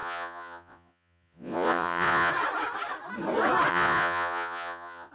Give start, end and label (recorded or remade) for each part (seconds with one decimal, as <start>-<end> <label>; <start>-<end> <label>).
0.0-2.3 remade; 2.3-3.7 recorded; 3.7-5.1 remade